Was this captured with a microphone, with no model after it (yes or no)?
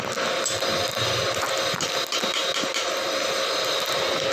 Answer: yes